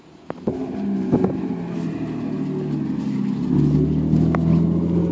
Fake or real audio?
real